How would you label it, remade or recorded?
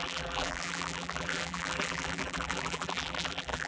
remade